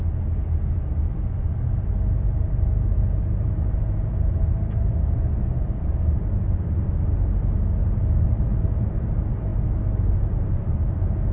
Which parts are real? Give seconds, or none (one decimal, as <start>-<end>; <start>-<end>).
0.0-11.3